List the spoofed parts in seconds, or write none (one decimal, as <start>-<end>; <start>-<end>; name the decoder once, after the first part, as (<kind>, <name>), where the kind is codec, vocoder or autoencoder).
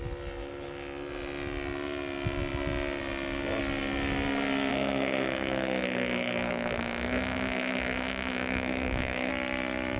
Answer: 4.7-9.3 (codec, SNAC)